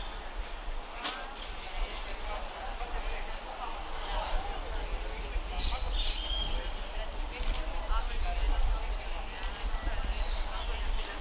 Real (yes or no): yes